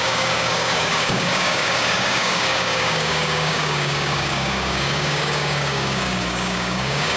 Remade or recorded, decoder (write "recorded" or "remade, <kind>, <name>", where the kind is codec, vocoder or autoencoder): remade, codec, DAC